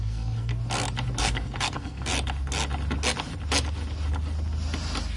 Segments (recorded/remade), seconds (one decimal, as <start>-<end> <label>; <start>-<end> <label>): 0.0-0.5 remade; 0.5-1.2 recorded; 1.2-2.1 remade; 2.1-5.2 recorded